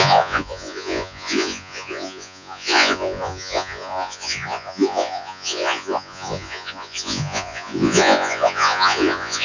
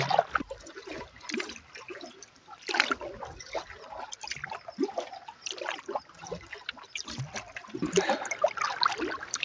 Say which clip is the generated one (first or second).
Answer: first